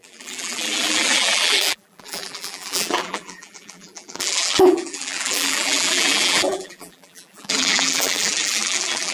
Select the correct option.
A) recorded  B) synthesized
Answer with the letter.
B